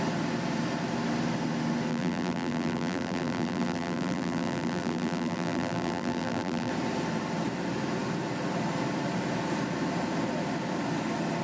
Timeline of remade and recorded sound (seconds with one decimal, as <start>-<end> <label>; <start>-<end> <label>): 0.0-1.9 recorded; 1.9-6.7 remade; 6.7-11.4 recorded